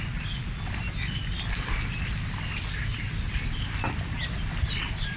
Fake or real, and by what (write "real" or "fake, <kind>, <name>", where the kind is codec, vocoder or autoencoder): real